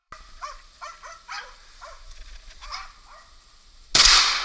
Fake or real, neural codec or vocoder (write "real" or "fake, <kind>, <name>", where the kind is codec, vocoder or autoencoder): real